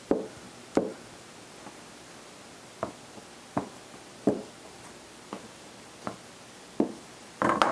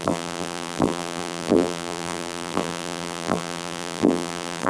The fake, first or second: second